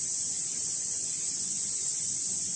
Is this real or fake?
fake